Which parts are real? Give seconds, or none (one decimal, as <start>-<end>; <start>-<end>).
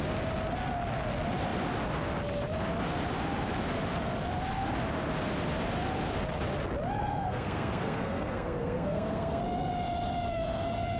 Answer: 0.0-7.0; 9.4-11.0